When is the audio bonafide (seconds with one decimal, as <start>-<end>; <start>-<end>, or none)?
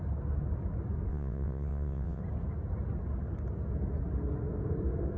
0.0-1.1; 2.2-5.2